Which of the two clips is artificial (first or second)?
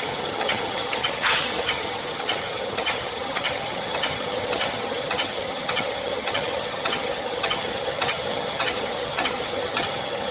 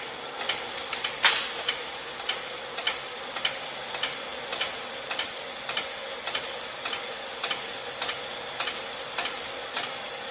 first